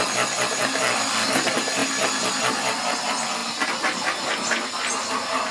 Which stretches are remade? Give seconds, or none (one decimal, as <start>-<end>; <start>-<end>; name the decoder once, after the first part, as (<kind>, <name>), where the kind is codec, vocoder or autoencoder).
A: none